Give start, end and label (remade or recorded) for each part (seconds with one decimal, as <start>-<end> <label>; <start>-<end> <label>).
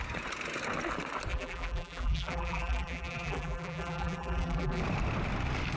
0.0-1.3 recorded; 1.3-4.8 remade; 4.8-5.8 recorded